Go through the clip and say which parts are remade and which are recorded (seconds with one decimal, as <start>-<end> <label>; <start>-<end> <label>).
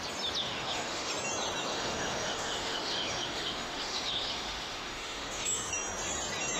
0.0-0.4 recorded; 0.4-1.1 remade; 1.1-1.7 recorded; 1.7-5.7 remade; 5.7-6.6 recorded